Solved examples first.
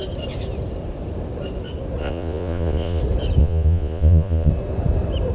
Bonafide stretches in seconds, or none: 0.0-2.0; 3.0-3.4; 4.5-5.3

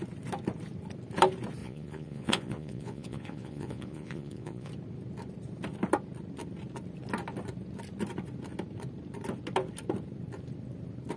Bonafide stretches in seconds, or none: 0.0-1.6; 4.7-11.2

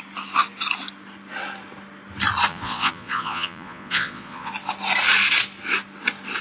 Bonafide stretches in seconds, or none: 0.0-2.5; 4.5-6.4

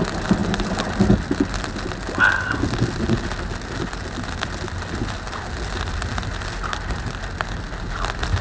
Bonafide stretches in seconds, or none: 0.0-8.4

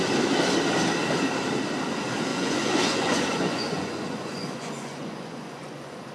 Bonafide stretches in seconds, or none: 0.0-2.3

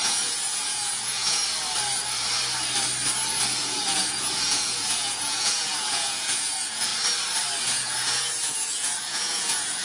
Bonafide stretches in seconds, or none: 1.4-3.6; 6.9-7.6